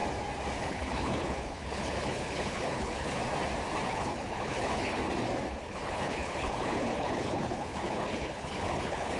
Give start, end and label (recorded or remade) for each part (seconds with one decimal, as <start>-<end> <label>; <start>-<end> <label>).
0.0-0.6 recorded; 0.6-3.2 remade; 3.2-3.9 recorded; 3.9-5.0 remade; 5.0-5.5 recorded; 5.5-9.2 remade